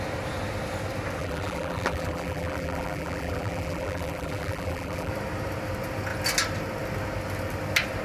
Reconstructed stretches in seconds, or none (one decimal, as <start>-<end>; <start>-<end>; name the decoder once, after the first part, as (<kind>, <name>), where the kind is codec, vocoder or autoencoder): 1.2-5.1 (vocoder, BigVGAN v2)